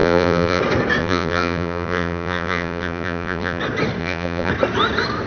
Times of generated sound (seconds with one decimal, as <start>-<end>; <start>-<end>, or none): 0.0-0.6; 1.0-3.6; 4.0-4.5